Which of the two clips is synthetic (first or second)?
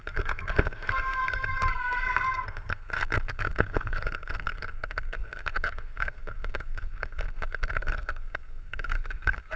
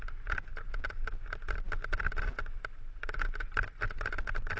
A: first